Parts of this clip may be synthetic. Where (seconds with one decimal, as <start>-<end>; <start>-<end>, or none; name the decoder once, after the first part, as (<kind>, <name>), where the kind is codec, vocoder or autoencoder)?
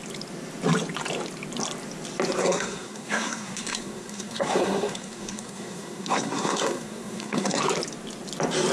2.4-7.6 (codec, SNAC)